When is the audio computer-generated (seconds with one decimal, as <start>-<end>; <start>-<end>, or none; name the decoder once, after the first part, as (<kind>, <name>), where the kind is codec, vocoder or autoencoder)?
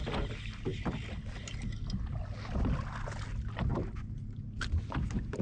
none